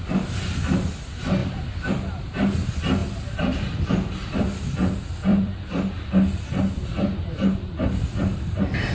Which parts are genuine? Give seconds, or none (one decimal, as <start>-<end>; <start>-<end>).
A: 0.0-1.4; 1.9-3.0; 3.9-5.3; 5.9-8.9